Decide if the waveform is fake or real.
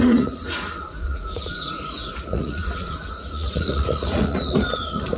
fake